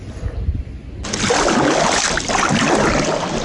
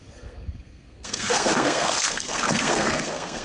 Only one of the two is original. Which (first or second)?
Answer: first